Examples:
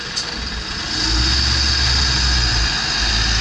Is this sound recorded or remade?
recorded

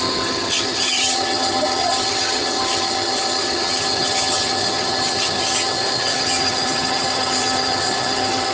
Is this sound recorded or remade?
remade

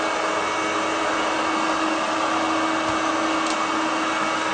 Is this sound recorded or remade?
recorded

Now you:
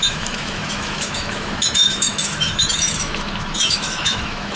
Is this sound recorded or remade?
remade